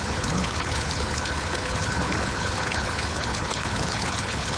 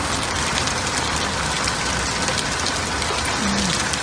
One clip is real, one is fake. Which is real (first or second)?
second